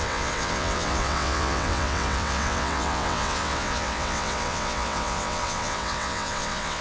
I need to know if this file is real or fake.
fake